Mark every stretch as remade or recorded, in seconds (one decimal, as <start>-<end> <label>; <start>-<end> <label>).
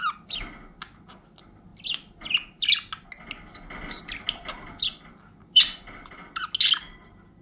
0.0-7.4 recorded